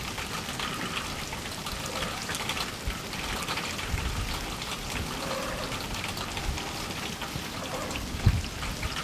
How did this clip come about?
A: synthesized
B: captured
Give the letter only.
B